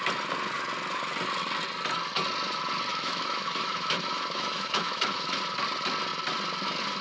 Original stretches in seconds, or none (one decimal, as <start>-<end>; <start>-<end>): 0.0-2.9; 5.4-7.0